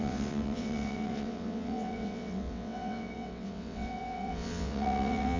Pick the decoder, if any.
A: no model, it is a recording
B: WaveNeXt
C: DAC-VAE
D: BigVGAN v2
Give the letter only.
B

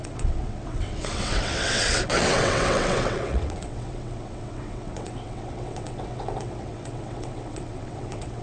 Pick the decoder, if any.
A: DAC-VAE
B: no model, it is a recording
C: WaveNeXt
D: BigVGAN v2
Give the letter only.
C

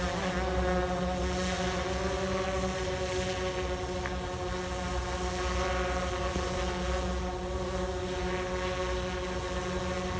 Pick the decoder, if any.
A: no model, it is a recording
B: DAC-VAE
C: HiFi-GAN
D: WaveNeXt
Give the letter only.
A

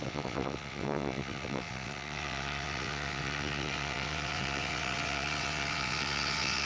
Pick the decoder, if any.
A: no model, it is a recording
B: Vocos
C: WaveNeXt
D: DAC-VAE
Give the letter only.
C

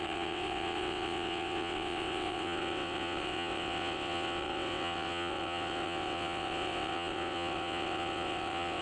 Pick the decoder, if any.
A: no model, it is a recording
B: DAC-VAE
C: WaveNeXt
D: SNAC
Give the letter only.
C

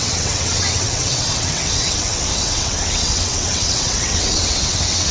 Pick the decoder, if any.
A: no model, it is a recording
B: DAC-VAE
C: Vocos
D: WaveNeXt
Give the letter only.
D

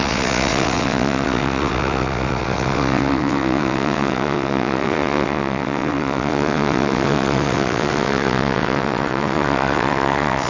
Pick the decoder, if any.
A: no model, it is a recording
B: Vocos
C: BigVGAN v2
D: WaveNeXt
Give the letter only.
D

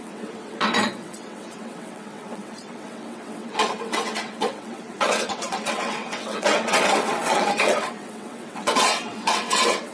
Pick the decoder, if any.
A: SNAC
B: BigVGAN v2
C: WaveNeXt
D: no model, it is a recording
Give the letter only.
C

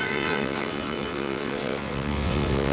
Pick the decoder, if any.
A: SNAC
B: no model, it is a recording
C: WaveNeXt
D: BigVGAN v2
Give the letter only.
C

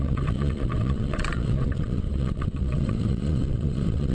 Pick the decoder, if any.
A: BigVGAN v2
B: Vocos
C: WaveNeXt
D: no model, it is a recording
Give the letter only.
C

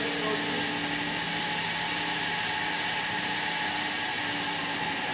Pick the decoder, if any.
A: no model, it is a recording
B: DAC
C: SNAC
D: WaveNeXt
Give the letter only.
A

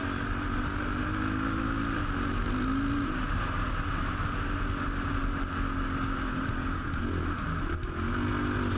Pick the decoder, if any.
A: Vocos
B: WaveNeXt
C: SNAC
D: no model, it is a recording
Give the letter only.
D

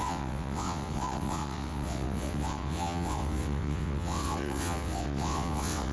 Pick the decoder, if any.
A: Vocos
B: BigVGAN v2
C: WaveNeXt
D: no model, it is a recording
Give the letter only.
C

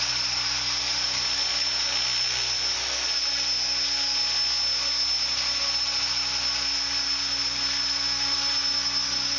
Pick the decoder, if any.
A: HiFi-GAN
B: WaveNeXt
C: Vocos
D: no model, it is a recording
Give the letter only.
D